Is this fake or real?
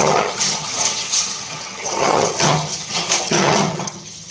fake